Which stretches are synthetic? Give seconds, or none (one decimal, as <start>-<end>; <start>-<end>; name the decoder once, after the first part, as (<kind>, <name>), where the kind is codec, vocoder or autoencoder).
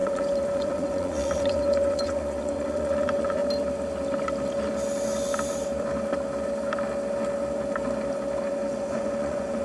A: 0.0-3.4 (vocoder, Vocos); 8.5-9.6